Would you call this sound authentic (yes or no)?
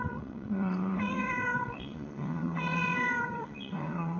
no